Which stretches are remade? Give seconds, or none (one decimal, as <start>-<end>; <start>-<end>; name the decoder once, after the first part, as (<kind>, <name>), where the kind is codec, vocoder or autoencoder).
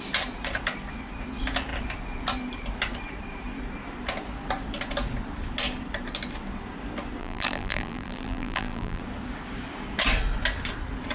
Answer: 7.2-9.0 (vocoder, BigVGAN v2)